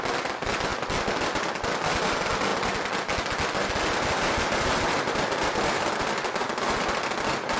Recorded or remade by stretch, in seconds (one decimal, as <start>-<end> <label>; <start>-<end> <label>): 0.0-7.6 recorded